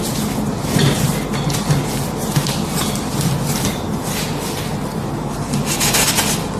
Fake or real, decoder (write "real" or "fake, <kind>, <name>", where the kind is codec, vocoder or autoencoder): real